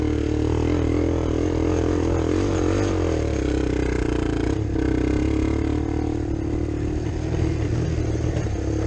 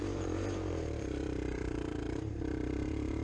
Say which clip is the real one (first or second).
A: first